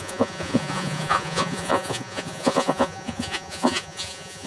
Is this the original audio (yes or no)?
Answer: no